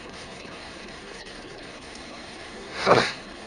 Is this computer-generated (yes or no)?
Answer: yes